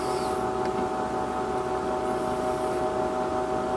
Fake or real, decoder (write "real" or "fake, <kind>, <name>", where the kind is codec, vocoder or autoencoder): real